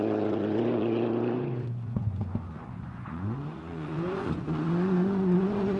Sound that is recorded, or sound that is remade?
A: remade